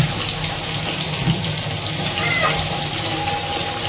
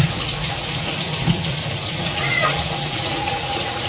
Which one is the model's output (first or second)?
second